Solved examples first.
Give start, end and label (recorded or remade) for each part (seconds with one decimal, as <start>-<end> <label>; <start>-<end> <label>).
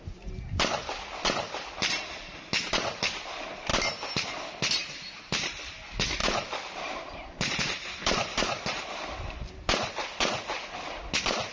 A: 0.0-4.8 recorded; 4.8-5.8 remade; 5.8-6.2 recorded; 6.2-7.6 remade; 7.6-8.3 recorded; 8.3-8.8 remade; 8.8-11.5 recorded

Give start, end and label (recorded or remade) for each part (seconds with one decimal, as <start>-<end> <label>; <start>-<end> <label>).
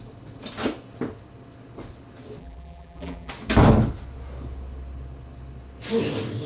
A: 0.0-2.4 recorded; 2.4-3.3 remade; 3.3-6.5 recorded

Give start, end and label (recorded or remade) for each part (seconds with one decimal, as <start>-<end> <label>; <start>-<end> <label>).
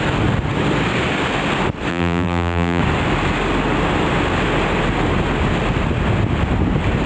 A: 0.0-1.9 recorded; 1.9-2.8 remade; 2.8-7.1 recorded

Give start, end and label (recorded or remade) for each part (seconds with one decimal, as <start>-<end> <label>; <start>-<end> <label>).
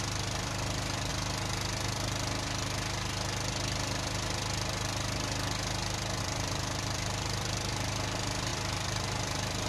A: 0.0-1.1 remade; 1.1-6.2 recorded; 6.2-9.7 remade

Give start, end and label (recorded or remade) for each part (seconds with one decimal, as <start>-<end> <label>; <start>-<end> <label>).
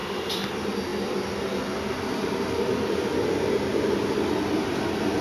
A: 0.0-0.5 remade; 0.5-5.2 recorded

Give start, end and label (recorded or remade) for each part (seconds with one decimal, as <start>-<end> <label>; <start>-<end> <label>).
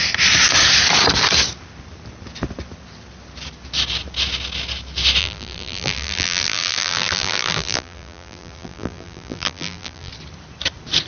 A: 0.0-5.2 recorded; 5.2-10.1 remade; 10.1-11.1 recorded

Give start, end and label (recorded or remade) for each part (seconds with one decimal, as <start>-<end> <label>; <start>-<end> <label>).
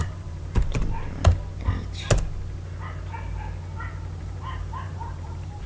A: 0.0-0.8 remade; 0.8-4.2 recorded; 4.2-5.7 remade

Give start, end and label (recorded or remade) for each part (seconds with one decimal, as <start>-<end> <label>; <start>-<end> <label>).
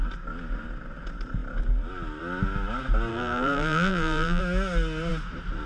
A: 0.0-3.1 recorded; 3.1-4.4 remade; 4.4-5.7 recorded